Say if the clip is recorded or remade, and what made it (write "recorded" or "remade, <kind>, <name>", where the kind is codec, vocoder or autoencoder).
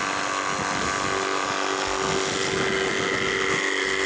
recorded